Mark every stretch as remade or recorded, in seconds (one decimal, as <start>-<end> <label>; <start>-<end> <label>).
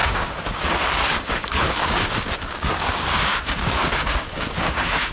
0.0-5.1 remade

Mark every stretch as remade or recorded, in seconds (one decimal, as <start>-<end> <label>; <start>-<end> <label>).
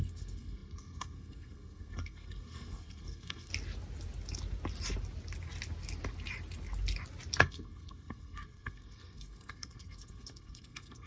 0.0-3.5 remade; 3.5-7.4 recorded; 7.4-11.1 remade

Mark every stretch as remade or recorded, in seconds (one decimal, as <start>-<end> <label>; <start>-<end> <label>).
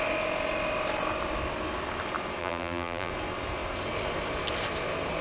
0.0-2.4 recorded; 2.4-3.1 remade; 3.1-5.2 recorded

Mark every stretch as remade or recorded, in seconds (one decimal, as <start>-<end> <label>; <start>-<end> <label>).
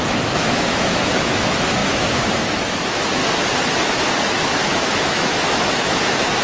0.0-3.2 remade; 3.2-4.2 recorded; 4.2-6.4 remade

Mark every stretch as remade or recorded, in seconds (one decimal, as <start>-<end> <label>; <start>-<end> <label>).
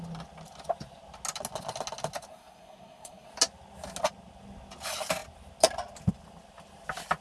0.0-2.3 recorded; 2.3-3.3 remade; 3.3-7.2 recorded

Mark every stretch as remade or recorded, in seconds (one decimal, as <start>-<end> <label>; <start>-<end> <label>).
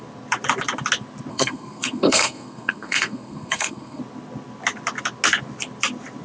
0.0-1.3 recorded; 1.3-4.0 remade; 4.0-6.2 recorded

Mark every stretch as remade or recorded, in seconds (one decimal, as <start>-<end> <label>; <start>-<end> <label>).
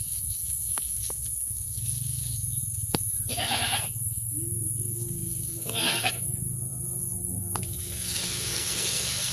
0.0-9.3 remade